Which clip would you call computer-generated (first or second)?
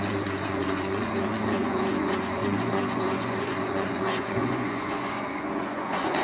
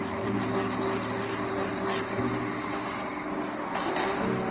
first